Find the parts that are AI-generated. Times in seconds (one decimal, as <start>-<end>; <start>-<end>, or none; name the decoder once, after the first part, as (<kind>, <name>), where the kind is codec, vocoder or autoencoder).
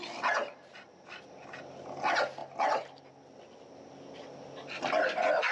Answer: none